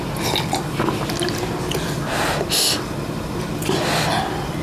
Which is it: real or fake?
real